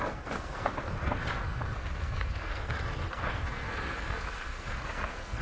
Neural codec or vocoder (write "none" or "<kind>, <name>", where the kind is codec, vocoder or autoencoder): codec, SNAC